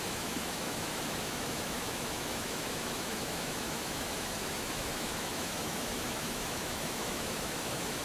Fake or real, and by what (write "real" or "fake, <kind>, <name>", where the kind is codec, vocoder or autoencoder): fake, autoencoder, DAC-VAE